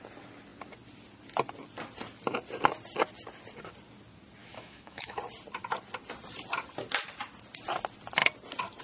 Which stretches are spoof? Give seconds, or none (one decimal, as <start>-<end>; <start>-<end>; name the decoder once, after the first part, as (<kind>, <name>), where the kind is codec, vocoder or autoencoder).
4.4-5.2 (autoencoder, DAC-VAE)